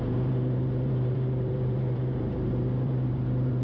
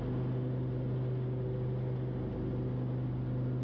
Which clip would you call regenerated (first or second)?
first